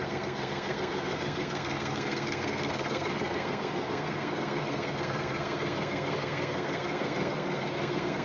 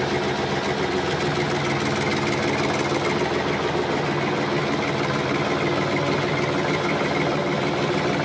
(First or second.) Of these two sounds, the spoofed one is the first